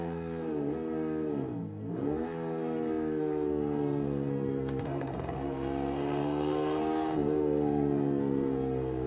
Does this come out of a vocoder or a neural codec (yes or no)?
yes